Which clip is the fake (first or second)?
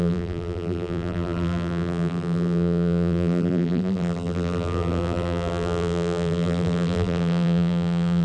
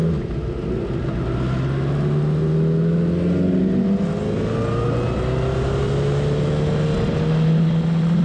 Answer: first